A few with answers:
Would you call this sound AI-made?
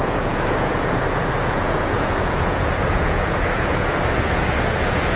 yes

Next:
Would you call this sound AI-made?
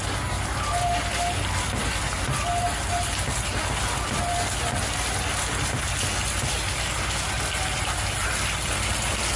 no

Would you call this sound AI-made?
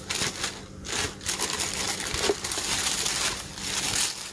no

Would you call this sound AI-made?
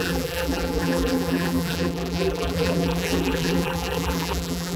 yes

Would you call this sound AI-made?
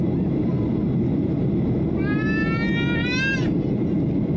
no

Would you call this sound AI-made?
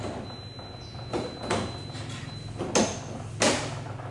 no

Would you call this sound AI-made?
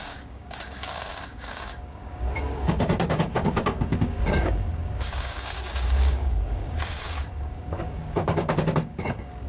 yes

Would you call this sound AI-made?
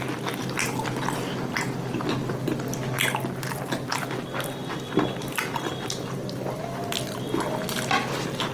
no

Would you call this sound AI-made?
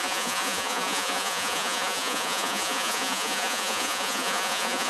yes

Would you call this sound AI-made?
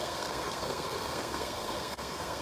yes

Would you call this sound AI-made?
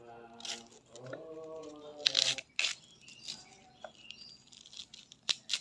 no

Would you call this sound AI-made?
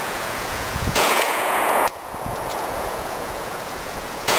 yes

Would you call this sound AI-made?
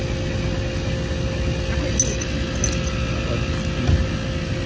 no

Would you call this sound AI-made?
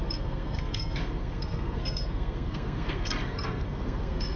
yes